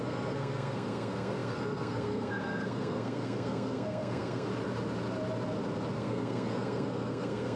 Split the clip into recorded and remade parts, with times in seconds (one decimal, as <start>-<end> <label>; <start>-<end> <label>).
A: 0.0-4.5 remade; 4.5-5.9 recorded; 5.9-7.6 remade